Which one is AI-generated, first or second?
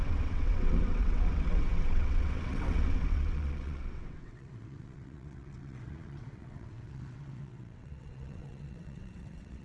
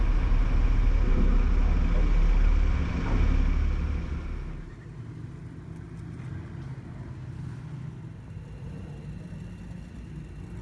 first